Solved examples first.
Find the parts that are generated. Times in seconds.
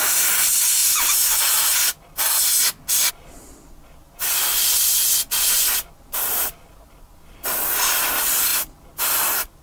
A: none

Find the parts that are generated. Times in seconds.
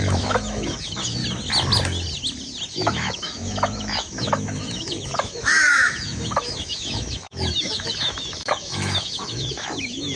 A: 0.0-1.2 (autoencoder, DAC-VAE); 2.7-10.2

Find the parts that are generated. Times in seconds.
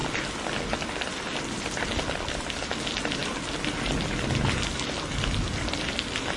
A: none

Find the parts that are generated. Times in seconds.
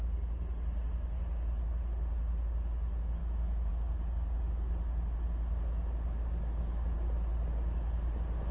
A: 3.2-3.7 (autoencoder, DAC-VAE)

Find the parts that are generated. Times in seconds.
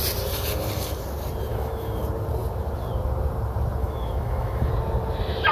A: 1.5-2.0 (autoencoder, DAC-VAE); 3.8-4.7